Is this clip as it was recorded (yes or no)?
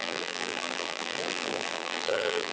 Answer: no